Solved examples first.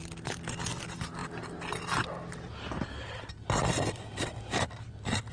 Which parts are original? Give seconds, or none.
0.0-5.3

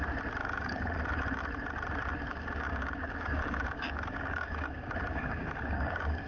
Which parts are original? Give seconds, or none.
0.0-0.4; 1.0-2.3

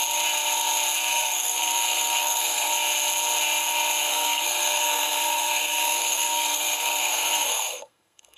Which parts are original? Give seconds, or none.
0.0-1.1; 2.7-4.1

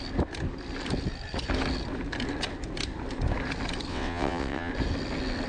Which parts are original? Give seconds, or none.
0.0-3.9; 4.7-5.5